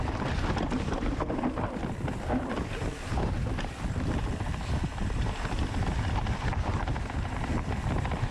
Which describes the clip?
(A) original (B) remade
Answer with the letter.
B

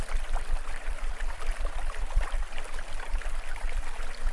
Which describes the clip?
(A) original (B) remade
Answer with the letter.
B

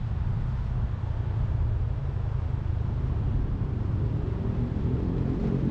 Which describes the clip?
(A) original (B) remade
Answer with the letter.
A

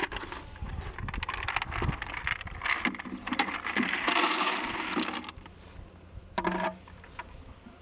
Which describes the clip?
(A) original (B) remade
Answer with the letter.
A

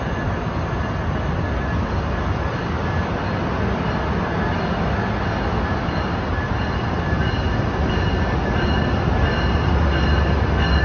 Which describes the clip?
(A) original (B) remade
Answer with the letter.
A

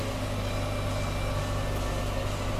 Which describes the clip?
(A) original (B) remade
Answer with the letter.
A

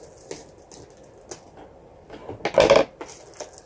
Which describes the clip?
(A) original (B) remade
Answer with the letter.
A